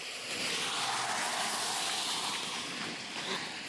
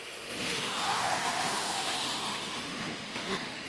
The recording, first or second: first